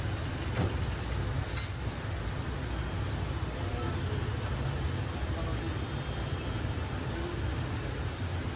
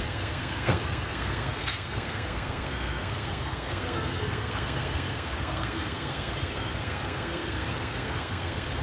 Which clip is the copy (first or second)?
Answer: second